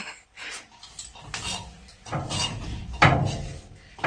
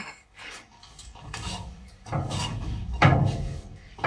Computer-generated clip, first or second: second